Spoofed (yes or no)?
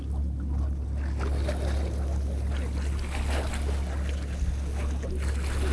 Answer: no